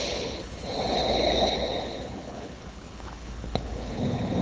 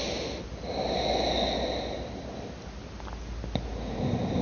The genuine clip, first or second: second